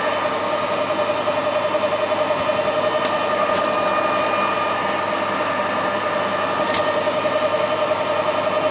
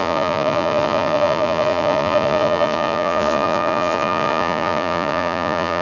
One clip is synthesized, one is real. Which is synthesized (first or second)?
second